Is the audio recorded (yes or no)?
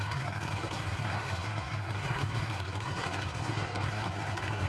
no